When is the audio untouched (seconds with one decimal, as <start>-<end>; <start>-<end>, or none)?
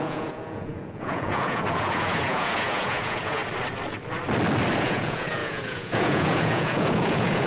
3.4-4.8